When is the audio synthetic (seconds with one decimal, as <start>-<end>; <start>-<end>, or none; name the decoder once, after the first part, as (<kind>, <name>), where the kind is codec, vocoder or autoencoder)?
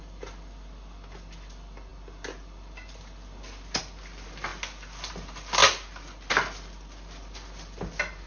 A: none